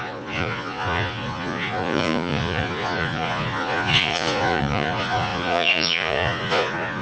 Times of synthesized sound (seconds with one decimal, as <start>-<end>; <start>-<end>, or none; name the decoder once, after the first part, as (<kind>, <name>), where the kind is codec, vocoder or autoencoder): 0.0-7.0 (vocoder, Vocos)